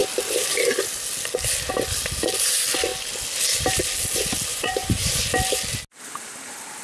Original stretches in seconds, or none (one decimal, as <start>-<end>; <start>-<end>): 0.0-4.5; 5.3-6.8